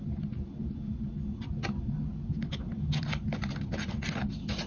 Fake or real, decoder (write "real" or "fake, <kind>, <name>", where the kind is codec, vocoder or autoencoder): real